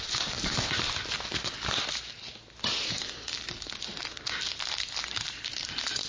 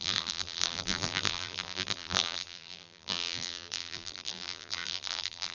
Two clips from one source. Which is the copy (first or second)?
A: second